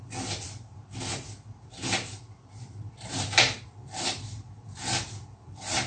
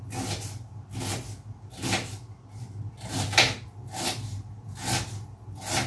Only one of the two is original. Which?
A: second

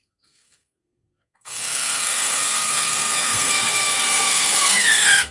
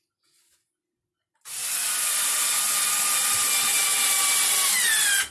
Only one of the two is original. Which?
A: second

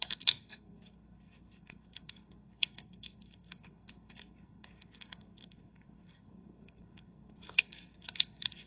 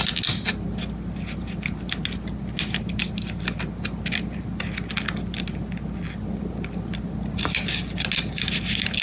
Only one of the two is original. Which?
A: second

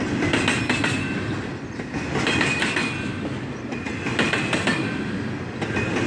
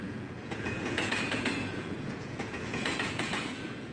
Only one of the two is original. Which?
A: first